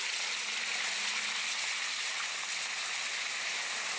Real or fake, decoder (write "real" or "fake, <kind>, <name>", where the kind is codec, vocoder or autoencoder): real